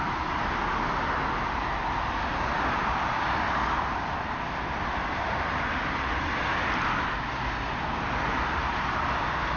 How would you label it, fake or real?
real